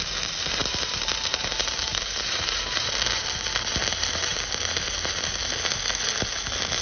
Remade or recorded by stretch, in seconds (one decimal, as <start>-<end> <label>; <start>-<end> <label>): 0.0-0.6 recorded; 0.6-2.9 remade; 2.9-6.8 recorded